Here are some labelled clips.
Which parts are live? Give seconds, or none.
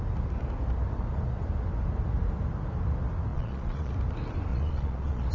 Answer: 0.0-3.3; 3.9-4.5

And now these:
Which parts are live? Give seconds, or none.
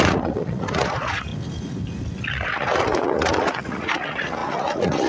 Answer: 1.3-2.3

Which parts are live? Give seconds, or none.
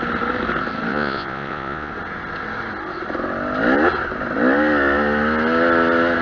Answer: 0.0-0.9; 1.9-6.2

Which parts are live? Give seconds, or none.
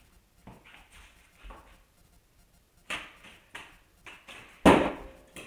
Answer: 0.0-5.5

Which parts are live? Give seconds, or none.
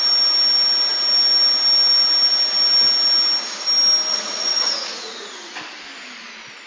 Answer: 0.0-4.1; 5.6-6.7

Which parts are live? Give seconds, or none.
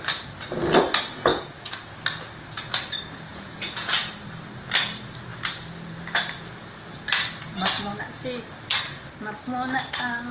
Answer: 0.0-1.3; 1.9-3.3; 4.1-10.3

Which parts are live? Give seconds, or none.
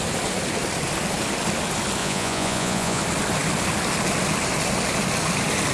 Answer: 0.0-2.0; 3.0-5.7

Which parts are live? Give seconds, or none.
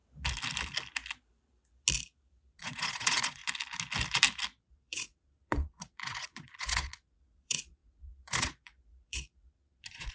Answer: 0.0-2.6; 3.4-4.7